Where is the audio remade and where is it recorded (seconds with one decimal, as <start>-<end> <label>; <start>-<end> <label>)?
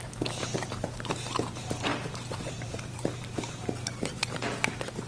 0.0-0.4 recorded; 0.4-1.0 remade; 1.0-1.9 recorded; 1.9-4.2 remade; 4.2-5.1 recorded